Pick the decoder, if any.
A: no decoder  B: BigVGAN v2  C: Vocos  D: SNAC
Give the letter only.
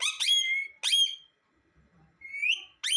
A